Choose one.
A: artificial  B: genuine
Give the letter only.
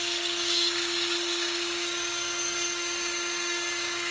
A